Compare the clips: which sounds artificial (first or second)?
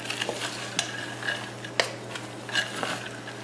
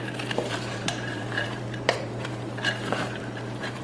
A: second